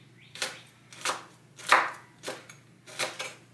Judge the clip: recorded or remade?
recorded